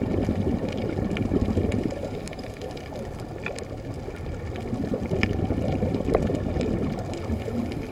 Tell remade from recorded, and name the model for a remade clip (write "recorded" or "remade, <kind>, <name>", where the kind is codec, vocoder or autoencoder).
recorded